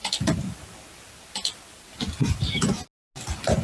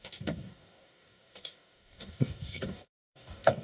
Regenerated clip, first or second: second